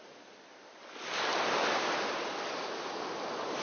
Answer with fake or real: real